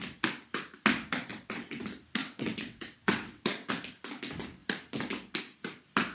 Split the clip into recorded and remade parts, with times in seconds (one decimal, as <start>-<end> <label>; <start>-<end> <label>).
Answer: 0.0-1.3 recorded; 1.3-1.8 remade; 1.8-2.2 recorded; 2.2-3.7 remade; 3.7-6.1 recorded